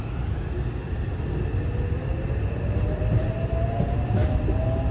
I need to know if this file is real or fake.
real